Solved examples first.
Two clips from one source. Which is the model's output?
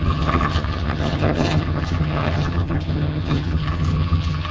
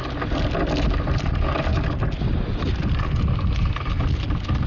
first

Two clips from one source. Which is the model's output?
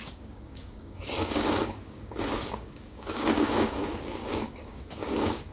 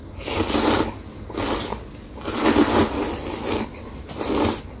first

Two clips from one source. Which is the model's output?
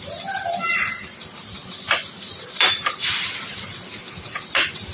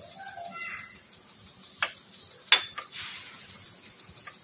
first